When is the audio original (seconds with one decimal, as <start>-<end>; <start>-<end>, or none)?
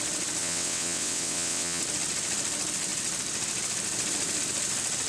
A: 0.0-0.4; 1.8-5.1